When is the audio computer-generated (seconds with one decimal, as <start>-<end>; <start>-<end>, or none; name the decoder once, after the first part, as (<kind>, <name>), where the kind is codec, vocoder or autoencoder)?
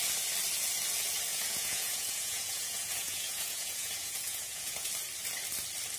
1.3-4.9 (vocoder, Vocos)